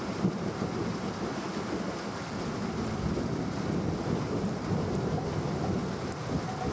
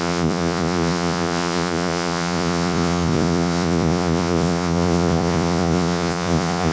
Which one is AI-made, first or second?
second